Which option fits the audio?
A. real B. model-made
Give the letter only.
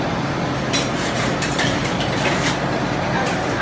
B